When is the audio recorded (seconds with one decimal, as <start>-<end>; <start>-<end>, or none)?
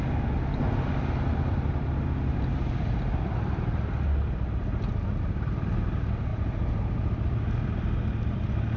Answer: 0.0-8.8